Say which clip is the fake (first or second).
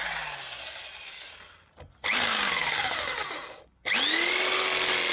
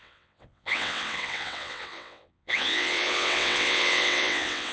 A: second